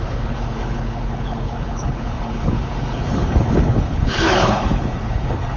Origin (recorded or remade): remade